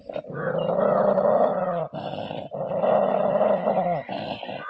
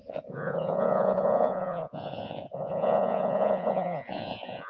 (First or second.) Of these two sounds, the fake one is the second